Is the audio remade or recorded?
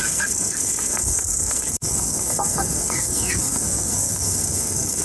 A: remade